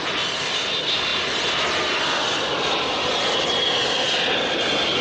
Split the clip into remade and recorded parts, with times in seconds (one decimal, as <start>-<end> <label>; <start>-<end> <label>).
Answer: 0.0-1.1 recorded; 1.1-3.2 remade; 3.2-5.0 recorded